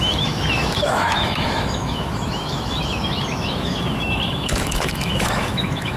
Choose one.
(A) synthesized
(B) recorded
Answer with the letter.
A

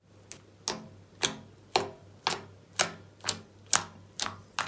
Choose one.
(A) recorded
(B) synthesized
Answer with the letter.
A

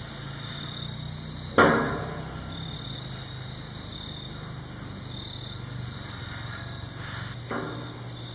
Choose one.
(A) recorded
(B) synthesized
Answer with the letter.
A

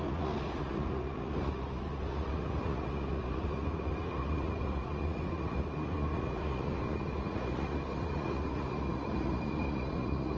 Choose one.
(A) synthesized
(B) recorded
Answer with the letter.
A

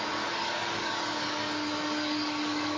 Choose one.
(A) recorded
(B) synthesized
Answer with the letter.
B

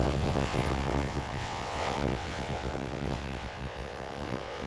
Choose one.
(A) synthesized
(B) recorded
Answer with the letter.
A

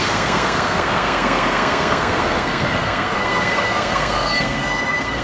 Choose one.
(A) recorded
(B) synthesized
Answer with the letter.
B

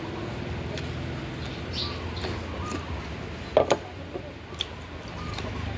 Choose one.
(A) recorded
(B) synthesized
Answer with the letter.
A